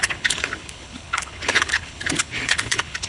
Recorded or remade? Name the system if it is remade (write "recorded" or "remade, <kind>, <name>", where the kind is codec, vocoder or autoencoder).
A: remade, codec, HILCodec